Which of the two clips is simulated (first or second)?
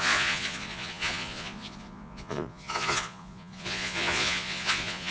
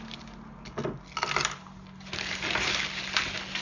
first